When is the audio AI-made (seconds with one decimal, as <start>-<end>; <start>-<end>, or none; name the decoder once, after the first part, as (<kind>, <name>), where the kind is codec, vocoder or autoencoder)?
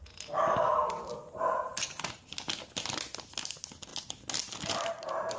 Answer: none